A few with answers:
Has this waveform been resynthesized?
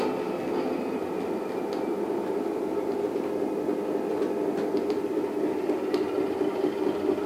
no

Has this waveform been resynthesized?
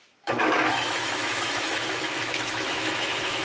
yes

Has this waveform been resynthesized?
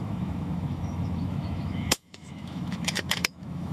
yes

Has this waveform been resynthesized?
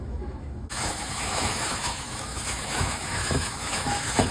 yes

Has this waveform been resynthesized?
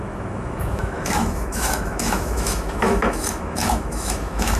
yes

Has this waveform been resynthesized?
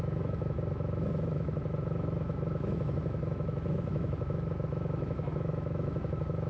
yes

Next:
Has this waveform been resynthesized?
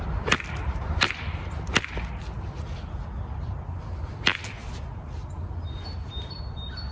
no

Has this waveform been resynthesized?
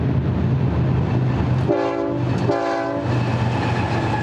no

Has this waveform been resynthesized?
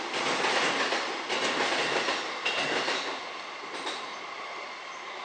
no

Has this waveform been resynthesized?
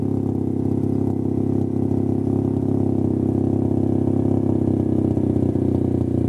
no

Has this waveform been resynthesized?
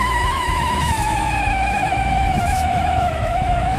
yes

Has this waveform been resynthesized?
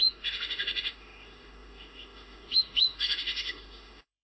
yes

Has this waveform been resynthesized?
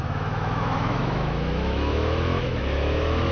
yes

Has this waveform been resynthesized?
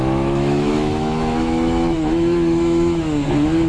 yes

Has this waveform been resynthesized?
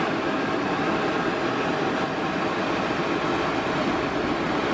no